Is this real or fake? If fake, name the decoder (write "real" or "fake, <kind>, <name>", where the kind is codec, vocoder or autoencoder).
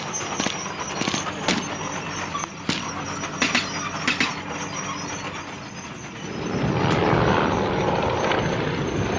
real